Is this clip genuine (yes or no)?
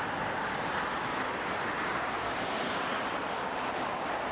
yes